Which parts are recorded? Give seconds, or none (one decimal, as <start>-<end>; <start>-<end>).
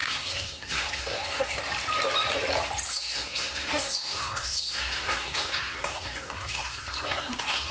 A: 1.6-2.9